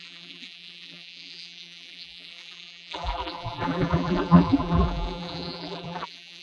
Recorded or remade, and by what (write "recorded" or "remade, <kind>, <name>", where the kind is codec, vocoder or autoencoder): remade, vocoder, BigVGAN v2